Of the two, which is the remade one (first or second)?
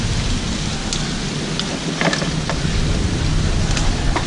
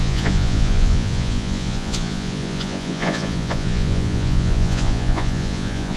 second